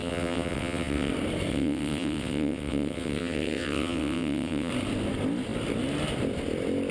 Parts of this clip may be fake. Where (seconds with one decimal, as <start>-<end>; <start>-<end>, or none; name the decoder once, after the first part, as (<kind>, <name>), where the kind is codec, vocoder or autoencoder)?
0.0-1.1 (vocoder, WaveNeXt); 1.5-4.7